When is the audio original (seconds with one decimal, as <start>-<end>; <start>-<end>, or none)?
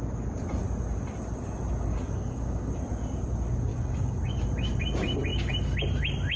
0.0-1.9; 2.7-3.7; 4.3-6.4